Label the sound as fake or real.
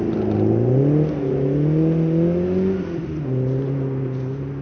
real